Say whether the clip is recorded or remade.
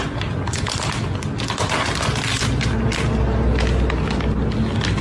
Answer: recorded